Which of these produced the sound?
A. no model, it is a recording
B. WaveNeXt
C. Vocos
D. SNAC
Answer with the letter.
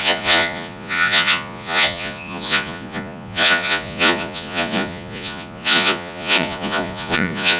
C